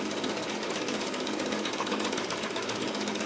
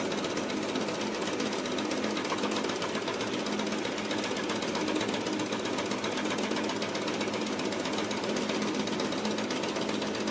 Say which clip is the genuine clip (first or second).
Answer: second